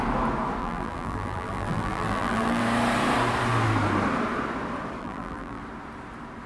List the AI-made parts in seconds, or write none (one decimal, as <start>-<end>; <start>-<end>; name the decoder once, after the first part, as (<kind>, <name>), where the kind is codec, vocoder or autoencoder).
0.6-2.6 (vocoder, BigVGAN v2); 5.0-5.6